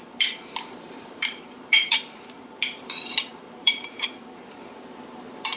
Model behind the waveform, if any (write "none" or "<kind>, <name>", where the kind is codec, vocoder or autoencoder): vocoder, BigVGAN v2